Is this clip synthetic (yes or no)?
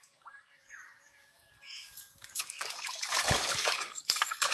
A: yes